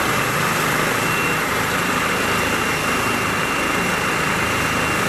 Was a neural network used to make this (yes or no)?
yes